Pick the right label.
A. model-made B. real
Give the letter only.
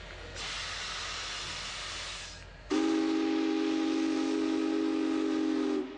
B